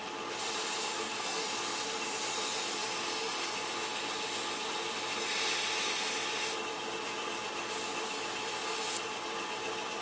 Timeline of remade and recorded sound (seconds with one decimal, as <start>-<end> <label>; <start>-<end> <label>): 0.0-0.8 recorded; 0.8-1.4 remade; 1.4-10.0 recorded